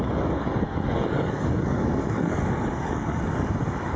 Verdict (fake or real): fake